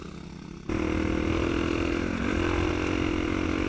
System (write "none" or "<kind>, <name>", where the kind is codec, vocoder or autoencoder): none